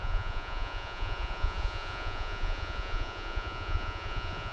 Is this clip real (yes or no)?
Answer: no